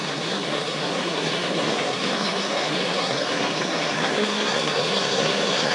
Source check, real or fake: fake